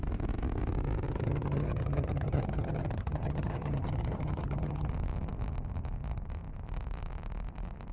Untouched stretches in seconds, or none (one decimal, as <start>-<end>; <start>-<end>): 0.0-1.1; 4.9-7.9